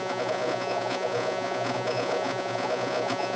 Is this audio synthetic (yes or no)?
yes